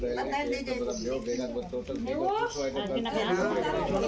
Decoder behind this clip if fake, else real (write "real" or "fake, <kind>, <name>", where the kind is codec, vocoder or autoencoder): real